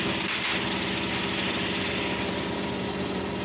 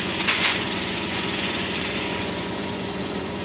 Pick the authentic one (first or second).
first